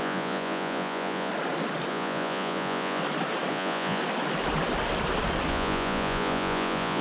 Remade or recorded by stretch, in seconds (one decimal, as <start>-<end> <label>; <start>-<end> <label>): 0.0-1.3 remade; 1.3-1.9 recorded; 1.9-3.0 remade; 3.0-3.5 recorded; 3.5-4.0 remade; 4.0-5.5 recorded; 5.5-7.0 remade